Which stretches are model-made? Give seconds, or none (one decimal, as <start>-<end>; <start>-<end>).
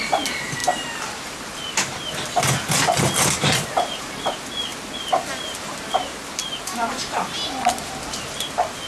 none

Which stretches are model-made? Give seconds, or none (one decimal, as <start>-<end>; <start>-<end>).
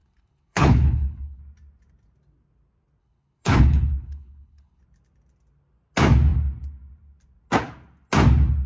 0.0-1.4; 3.0-4.8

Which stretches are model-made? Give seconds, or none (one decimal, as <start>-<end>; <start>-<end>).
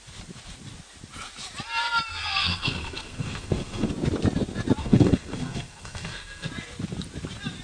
2.1-3.9; 4.8-6.5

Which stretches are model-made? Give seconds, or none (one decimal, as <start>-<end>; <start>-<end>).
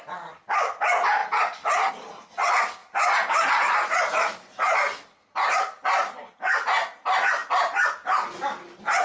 2.8-5.6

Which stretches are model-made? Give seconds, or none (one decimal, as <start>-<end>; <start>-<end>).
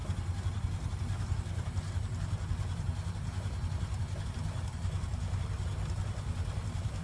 none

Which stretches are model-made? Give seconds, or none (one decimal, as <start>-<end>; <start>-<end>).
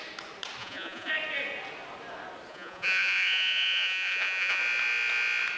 0.6-1.1; 2.5-4.6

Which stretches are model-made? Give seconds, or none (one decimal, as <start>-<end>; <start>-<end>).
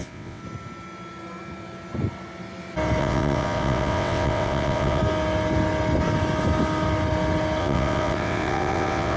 0.0-0.4; 3.0-5.0; 7.6-9.2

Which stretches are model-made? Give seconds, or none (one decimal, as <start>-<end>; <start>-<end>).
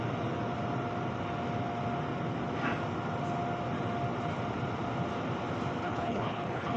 5.8-6.8